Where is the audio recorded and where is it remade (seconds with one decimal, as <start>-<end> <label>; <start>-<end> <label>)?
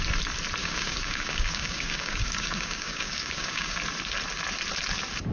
0.0-0.6 recorded; 0.6-3.8 remade; 3.8-5.3 recorded